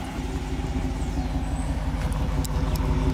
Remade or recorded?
recorded